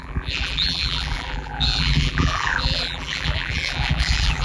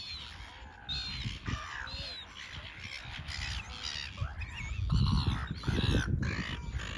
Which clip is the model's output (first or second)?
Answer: first